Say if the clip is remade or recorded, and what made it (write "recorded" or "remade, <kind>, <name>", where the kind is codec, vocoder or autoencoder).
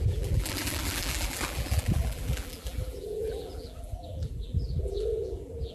remade, vocoder, BigVGAN v2